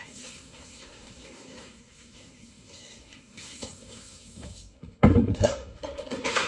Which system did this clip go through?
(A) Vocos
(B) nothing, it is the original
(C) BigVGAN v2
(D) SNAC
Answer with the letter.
D